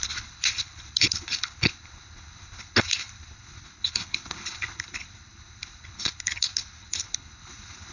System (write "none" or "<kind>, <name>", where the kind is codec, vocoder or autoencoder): codec, HILCodec